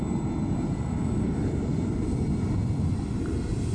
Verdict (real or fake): real